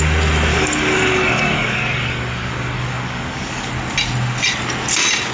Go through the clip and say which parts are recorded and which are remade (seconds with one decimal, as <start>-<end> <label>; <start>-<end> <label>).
0.0-0.5 recorded; 0.5-3.7 remade; 3.7-5.3 recorded